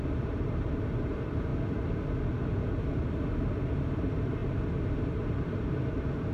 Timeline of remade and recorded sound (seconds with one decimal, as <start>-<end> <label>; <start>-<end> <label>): 0.0-1.5 remade; 1.5-4.0 recorded; 4.0-4.4 remade; 4.4-5.0 recorded; 5.0-6.3 remade